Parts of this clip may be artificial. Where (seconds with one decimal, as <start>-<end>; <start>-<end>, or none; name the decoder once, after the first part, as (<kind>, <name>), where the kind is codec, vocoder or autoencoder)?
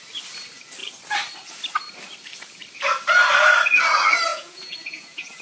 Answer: 4.3-5.4 (vocoder, Vocos)